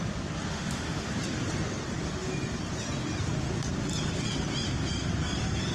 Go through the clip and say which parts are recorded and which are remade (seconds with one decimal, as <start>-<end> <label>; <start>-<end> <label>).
0.0-0.5 recorded; 0.5-1.1 remade; 1.1-5.7 recorded